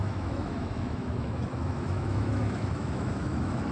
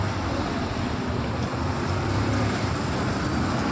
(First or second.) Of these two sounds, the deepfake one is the first